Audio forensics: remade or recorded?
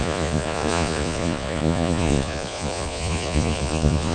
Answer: remade